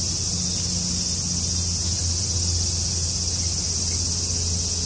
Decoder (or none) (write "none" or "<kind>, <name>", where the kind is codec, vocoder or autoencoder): none